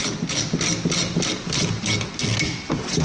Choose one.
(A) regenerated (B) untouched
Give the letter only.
B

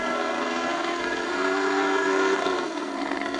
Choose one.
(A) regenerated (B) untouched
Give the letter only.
A